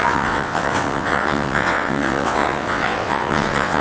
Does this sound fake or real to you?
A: fake